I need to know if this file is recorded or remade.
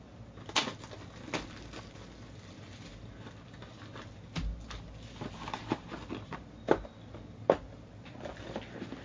recorded